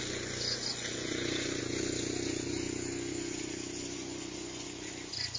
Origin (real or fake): fake